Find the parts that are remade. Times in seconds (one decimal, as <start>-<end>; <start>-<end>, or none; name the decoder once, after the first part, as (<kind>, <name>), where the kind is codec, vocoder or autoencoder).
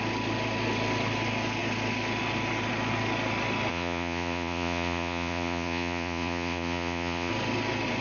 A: 3.7-7.3 (vocoder, Vocos)